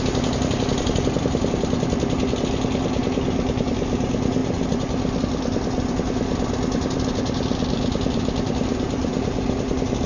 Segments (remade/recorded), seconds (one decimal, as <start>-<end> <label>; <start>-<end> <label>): 0.0-10.1 recorded

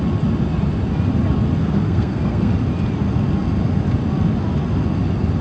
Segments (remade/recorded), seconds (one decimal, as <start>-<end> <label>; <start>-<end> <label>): 0.0-1.6 recorded; 1.6-2.5 remade; 2.5-5.4 recorded